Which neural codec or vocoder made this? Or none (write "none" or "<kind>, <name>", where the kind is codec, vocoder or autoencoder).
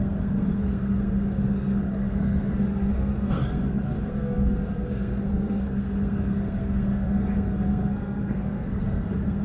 codec, SNAC